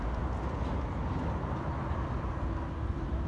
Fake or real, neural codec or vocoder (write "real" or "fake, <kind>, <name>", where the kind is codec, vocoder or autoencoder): real